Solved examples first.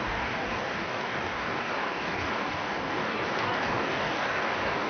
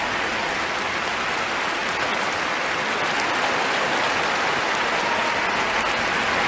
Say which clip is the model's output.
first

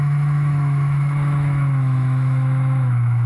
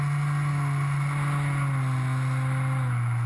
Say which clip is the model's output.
first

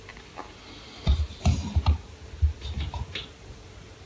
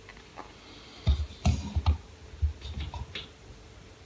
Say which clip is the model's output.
first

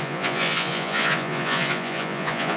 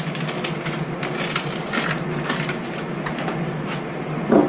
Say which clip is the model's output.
first